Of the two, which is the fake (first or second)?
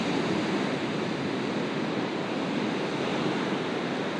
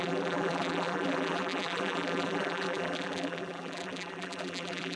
second